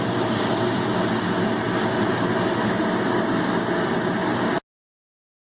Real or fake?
real